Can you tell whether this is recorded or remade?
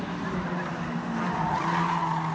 recorded